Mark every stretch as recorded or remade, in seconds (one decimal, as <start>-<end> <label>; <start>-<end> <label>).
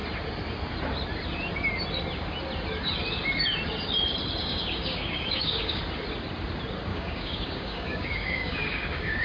0.0-4.4 recorded; 4.4-5.8 remade; 5.8-6.9 recorded; 6.9-9.2 remade